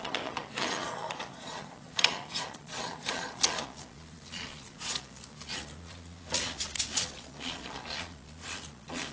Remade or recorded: remade